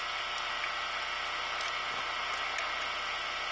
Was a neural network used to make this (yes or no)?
no